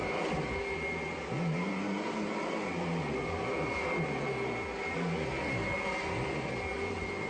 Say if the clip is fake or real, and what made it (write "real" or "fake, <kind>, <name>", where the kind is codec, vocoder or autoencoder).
real